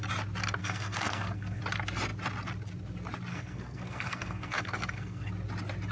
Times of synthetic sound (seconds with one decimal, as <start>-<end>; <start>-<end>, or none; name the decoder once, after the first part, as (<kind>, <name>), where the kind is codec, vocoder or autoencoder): 0.6-1.6 (codec, SNAC); 3.3-5.3